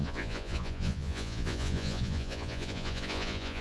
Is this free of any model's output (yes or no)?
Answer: no